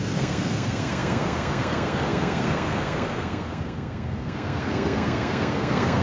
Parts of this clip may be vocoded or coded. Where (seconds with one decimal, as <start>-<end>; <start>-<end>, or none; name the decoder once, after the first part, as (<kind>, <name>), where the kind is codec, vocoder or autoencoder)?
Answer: 0.0-6.0 (codec, SNAC)